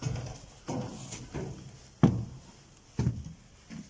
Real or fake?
real